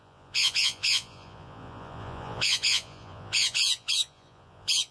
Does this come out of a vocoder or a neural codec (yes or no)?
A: yes